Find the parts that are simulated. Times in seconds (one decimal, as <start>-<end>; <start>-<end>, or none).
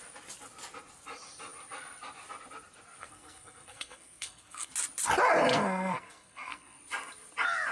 3.0-4.7; 5.5-6.8